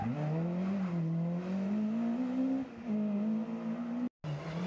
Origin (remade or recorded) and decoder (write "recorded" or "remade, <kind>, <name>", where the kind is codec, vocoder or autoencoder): recorded